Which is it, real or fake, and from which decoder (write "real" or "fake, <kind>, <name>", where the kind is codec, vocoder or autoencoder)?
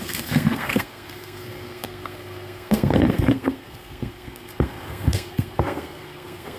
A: fake, codec, SNAC